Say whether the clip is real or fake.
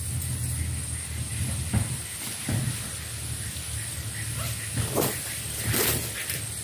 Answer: real